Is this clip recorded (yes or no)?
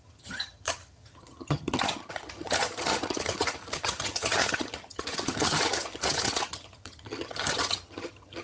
no